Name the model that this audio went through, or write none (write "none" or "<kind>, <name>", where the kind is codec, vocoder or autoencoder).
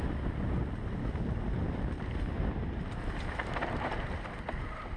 none